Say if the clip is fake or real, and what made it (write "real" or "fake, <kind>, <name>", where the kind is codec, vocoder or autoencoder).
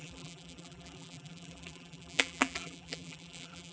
fake, vocoder, BigVGAN v2